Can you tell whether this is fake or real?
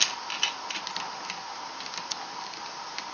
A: real